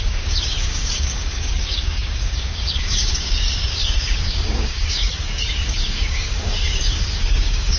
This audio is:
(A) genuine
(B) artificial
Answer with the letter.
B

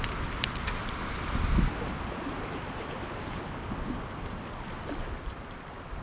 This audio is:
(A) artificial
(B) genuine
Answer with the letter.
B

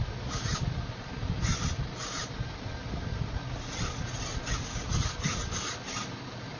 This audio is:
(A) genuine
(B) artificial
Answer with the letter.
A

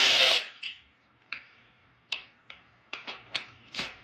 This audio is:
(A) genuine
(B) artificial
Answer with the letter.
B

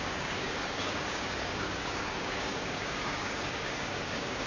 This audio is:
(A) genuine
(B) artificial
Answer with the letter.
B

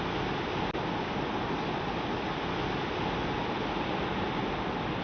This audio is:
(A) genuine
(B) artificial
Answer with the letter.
A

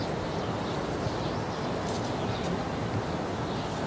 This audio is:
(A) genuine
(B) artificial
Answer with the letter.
A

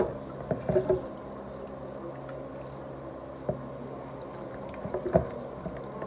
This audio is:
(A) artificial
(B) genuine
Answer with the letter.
B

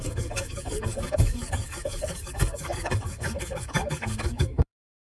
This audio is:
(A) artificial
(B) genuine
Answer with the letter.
A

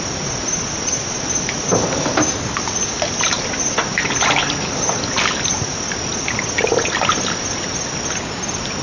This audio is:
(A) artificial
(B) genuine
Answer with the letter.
B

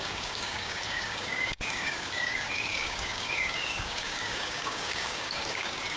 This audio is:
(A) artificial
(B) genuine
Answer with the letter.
A